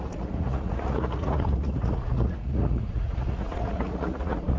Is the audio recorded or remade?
remade